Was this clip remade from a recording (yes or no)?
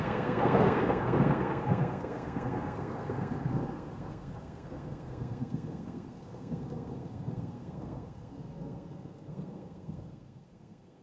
yes